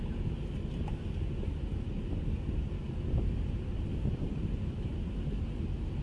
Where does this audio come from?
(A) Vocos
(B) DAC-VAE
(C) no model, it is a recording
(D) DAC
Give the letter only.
C